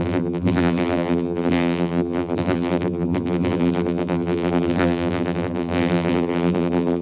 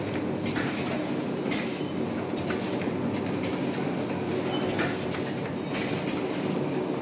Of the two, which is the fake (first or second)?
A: first